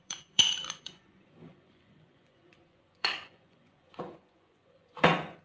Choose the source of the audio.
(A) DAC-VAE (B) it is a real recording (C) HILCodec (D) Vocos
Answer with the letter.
D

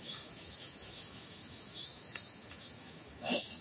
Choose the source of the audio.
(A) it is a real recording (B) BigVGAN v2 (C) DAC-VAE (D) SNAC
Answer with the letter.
C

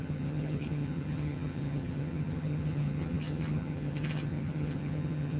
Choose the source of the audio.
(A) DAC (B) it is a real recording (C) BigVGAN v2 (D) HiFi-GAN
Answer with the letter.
D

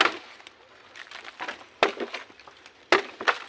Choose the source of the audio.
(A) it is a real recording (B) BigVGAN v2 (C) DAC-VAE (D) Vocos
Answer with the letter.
A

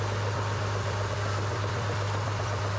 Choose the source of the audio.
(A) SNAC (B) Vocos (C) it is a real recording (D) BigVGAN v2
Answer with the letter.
D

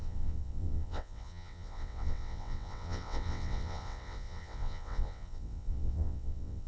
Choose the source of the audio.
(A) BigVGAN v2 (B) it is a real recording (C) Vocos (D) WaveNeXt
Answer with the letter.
D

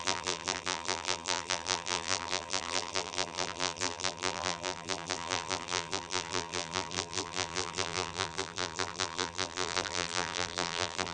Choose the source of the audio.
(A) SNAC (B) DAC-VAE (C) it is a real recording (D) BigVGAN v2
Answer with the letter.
D